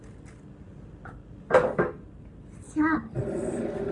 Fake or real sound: real